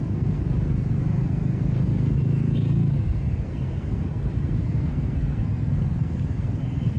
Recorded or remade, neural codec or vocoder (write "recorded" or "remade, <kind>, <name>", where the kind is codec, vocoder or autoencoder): remade, codec, SNAC